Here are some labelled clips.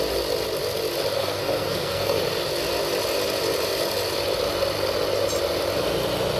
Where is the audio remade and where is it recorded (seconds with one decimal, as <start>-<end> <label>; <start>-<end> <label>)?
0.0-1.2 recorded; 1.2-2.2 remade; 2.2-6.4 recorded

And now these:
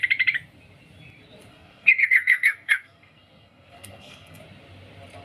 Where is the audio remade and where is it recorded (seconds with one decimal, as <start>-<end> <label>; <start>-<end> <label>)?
0.0-1.5 recorded; 1.5-4.4 remade; 4.4-5.2 recorded

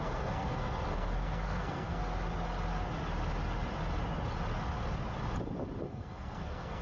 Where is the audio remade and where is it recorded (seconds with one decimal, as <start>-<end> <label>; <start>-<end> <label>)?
0.0-2.0 remade; 2.0-5.8 recorded; 5.8-6.8 remade

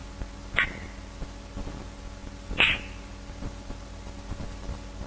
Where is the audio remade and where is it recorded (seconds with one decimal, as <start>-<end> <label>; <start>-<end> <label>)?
0.0-5.1 recorded

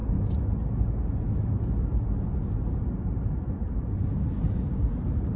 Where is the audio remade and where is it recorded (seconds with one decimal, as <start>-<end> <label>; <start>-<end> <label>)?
0.0-3.2 recorded; 3.2-5.4 remade